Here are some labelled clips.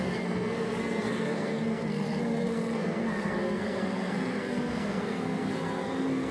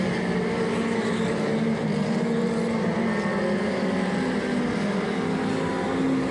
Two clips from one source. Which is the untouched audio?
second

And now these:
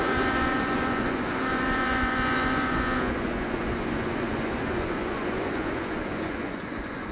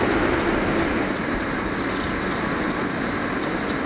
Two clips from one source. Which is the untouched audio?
second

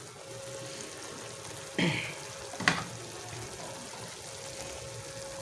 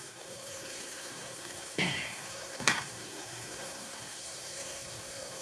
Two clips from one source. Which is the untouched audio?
first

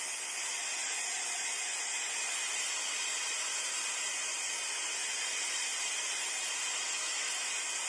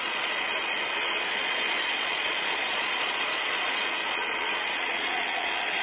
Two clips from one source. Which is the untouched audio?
first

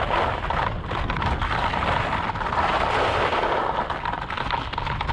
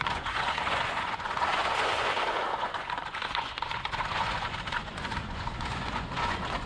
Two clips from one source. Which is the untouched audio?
first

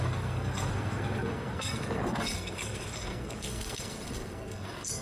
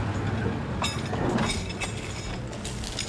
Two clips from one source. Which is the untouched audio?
second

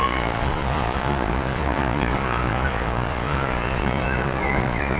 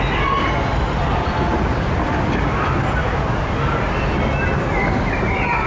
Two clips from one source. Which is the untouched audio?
second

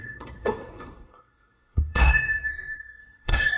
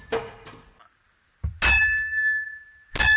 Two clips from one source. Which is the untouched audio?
second